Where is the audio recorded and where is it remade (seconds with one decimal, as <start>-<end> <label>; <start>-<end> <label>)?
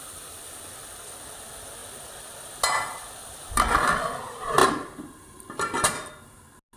0.0-4.6 recorded; 4.6-6.1 remade; 6.1-6.8 recorded